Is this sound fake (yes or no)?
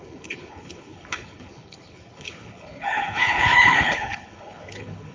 yes